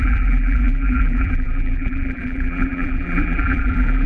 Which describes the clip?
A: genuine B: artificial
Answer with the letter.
B